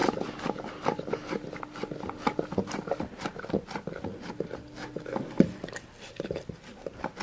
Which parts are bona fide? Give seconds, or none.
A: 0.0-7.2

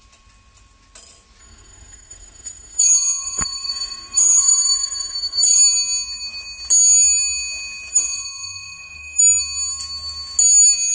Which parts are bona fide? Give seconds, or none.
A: 0.0-1.4; 5.6-7.9; 9.2-10.9

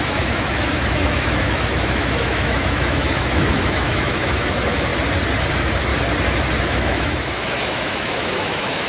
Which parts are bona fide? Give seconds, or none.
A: 4.9-5.5; 5.9-6.6

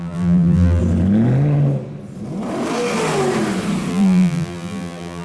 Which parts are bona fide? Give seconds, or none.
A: 0.8-3.9

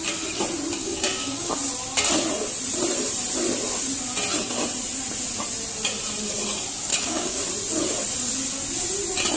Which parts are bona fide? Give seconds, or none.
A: 0.0-0.8; 1.5-6.9; 7.4-9.4

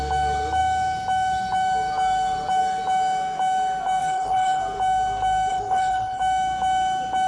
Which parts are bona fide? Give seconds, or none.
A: 0.0-4.0; 4.6-5.5; 6.2-7.3

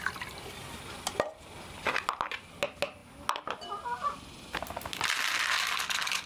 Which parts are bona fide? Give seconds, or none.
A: 0.0-6.3